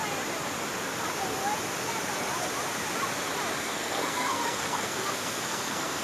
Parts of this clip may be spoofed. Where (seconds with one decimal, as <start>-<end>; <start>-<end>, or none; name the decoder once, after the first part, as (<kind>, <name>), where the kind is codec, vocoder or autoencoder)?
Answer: 3.6-6.0 (codec, SNAC)